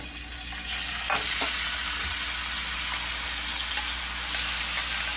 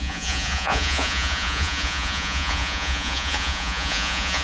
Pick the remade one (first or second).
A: second